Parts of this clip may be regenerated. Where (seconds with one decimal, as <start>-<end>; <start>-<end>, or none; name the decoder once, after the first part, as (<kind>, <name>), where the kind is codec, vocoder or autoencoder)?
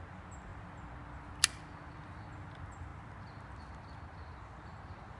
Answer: none